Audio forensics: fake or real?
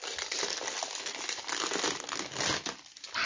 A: real